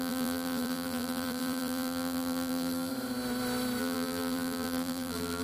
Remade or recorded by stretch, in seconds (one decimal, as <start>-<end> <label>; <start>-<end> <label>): 0.0-2.9 remade; 2.9-3.8 recorded; 3.8-5.4 remade

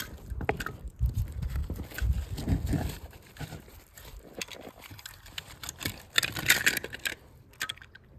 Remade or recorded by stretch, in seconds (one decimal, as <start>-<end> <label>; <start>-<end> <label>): 0.0-0.9 recorded; 0.9-1.6 remade; 1.6-2.6 recorded; 2.6-4.1 remade; 4.1-7.1 recorded; 7.1-8.2 remade

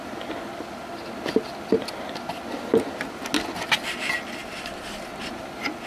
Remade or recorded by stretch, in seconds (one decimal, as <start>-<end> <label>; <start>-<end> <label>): 0.0-4.4 recorded; 4.4-5.4 remade; 5.4-5.9 recorded

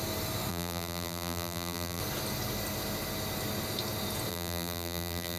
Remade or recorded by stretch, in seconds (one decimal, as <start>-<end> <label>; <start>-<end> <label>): 0.0-0.5 recorded; 0.5-2.0 remade; 2.0-4.3 recorded; 4.3-5.4 remade

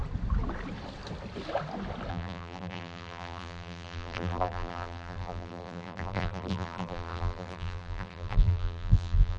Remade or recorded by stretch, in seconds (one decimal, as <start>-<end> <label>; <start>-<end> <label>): 0.0-2.1 recorded; 2.1-9.4 remade

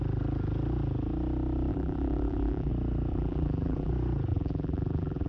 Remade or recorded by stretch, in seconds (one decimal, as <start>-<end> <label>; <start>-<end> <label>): 0.0-1.7 recorded; 1.7-2.7 remade; 2.7-3.1 recorded; 3.1-3.9 remade; 3.9-4.3 recorded; 4.3-5.3 remade

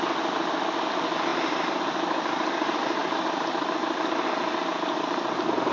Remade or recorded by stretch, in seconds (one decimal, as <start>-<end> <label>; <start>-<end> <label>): 0.0-5.7 recorded